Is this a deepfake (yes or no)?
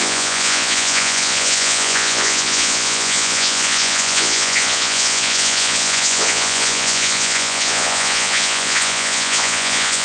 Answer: yes